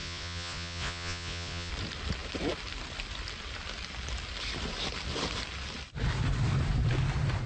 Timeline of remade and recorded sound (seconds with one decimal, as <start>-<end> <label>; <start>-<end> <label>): 0.0-1.7 remade; 1.7-7.5 recorded